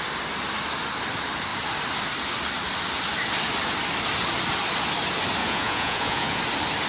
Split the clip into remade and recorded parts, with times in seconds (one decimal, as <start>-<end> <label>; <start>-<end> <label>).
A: 0.0-5.4 recorded; 5.4-6.4 remade; 6.4-6.9 recorded